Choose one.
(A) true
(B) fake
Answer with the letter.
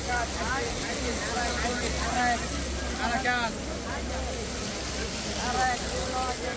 A